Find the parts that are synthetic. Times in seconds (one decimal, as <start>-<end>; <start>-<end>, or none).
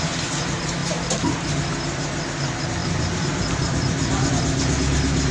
2.8-4.3